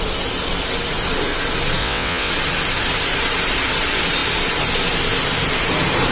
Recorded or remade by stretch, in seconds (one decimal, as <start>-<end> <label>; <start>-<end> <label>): 0.0-1.8 recorded; 1.8-2.3 remade; 2.3-6.1 recorded